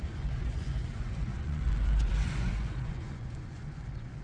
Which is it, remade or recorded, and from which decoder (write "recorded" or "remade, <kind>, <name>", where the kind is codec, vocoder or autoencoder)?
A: remade, vocoder, Vocos